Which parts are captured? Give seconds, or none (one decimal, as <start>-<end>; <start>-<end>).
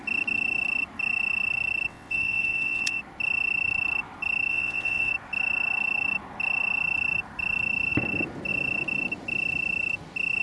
0.0-1.9; 3.0-4.5; 5.1-10.4